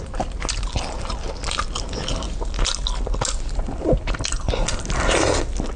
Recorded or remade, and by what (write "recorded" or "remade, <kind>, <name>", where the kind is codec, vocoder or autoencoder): recorded